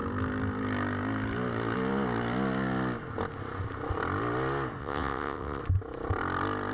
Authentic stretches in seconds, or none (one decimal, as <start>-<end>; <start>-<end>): 0.0-4.8; 5.6-6.7